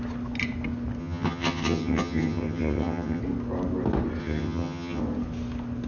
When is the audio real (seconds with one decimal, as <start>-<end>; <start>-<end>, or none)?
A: 0.0-1.0; 3.2-4.2; 5.0-5.9